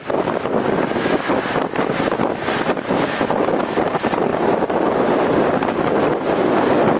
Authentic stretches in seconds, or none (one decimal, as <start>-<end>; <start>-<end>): 0.0-4.3; 5.5-7.0